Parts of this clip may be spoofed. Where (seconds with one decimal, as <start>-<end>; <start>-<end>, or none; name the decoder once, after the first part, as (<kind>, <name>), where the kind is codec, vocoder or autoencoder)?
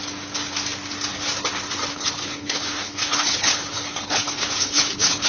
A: 1.9-5.3 (codec, HILCodec)